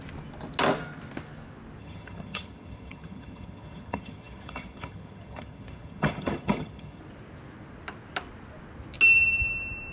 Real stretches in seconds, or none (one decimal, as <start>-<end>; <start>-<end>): 0.0-1.8; 7.0-9.9